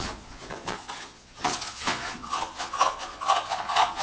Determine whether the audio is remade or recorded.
remade